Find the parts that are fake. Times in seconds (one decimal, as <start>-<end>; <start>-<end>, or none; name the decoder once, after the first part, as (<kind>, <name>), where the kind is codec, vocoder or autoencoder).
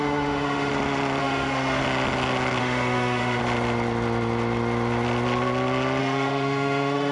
0.0-0.7 (autoencoder, DAC-VAE); 1.2-1.8; 2.6-3.4; 6.0-7.1